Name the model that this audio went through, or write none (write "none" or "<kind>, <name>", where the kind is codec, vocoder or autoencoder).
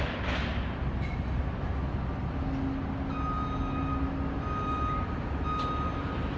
none